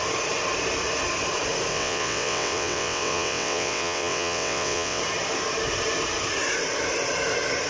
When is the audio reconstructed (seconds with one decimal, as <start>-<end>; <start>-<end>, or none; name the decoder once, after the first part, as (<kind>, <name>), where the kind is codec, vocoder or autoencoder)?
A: 1.7-5.0 (vocoder, WaveNeXt)